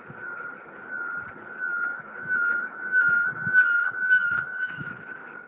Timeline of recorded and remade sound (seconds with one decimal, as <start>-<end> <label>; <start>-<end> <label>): 0.0-1.7 recorded; 1.7-5.0 remade; 5.0-5.5 recorded